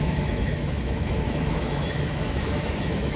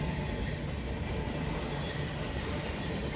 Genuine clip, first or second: second